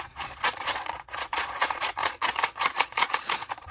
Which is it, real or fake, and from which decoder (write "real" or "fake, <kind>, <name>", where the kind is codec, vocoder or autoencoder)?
fake, vocoder, Vocos